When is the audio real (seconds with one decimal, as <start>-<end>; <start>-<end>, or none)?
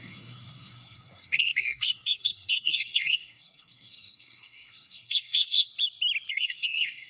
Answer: 5.7-6.3